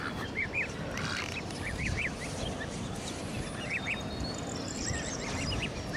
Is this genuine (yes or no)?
yes